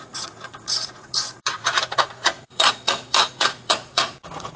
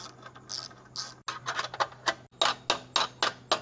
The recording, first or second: second